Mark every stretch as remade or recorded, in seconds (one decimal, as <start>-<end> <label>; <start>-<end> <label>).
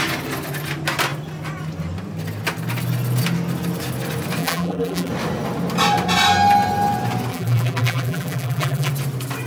0.0-4.4 recorded; 4.4-5.1 remade; 5.1-7.3 recorded; 7.3-8.9 remade; 8.9-9.5 recorded